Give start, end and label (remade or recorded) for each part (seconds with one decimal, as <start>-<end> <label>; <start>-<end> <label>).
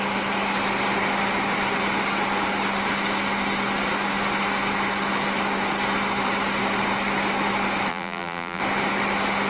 0.0-7.9 recorded; 7.9-8.6 remade; 8.6-9.5 recorded